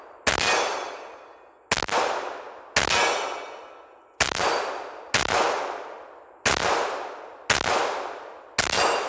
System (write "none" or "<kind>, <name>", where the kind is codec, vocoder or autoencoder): none